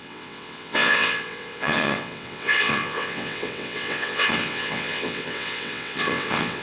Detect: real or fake fake